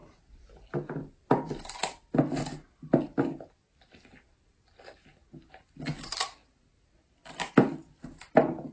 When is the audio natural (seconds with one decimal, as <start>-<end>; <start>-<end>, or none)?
0.0-8.7